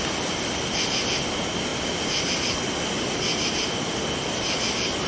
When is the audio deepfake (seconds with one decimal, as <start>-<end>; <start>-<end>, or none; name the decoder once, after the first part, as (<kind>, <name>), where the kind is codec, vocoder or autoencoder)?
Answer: none